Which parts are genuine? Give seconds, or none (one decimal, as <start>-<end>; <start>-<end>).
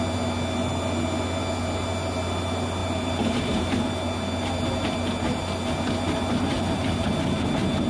0.0-7.9